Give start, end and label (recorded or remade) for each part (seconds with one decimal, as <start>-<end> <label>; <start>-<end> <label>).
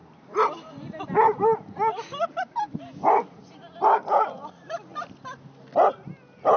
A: 0.0-6.6 recorded